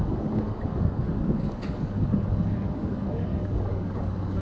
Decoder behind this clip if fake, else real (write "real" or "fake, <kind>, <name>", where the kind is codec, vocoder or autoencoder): fake, codec, DAC